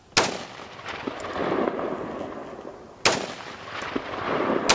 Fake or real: real